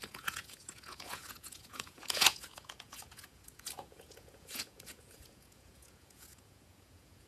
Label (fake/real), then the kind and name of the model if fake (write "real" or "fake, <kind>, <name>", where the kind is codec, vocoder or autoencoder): fake, vocoder, Vocos